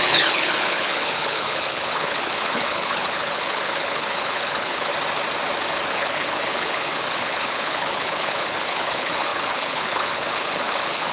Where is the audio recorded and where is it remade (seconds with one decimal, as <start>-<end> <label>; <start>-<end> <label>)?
0.0-4.9 remade; 4.9-5.9 recorded; 5.9-11.1 remade